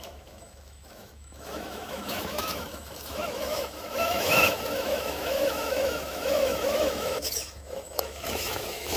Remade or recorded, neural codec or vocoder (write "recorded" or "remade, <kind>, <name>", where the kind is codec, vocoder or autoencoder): remade, autoencoder, DAC-VAE